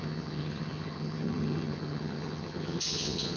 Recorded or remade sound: remade